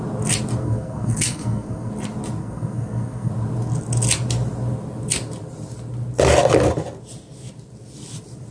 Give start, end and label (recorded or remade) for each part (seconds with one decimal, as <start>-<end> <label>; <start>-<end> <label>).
0.0-0.6 recorded; 0.6-1.9 remade; 1.9-2.4 recorded; 2.4-3.3 remade; 3.3-8.5 recorded